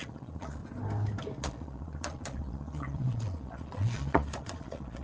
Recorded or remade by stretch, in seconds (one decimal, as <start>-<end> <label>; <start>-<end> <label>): 0.0-0.6 remade; 0.6-1.4 recorded; 1.4-5.0 remade